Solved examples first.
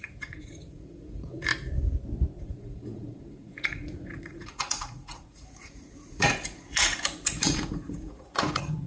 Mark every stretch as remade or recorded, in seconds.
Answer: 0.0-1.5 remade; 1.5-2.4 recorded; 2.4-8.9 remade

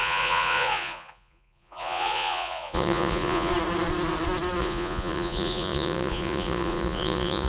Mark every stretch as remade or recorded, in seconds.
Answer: 0.0-3.5 remade; 3.5-4.6 recorded; 4.6-7.5 remade